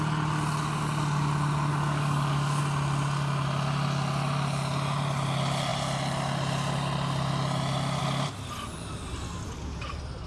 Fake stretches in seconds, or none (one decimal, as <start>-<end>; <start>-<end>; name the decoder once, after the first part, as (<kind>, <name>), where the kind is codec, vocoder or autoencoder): 1.7-2.6 (codec, DAC)